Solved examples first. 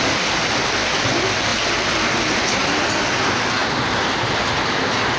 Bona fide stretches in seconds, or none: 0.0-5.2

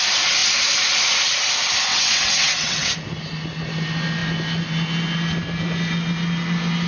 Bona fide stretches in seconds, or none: 0.0-1.9; 2.9-6.9

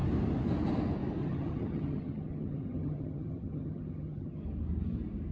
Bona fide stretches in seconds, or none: 0.0-1.2; 4.4-5.3